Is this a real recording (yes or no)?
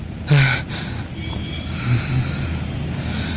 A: yes